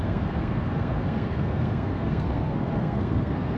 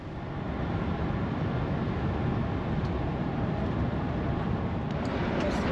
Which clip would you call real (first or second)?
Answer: second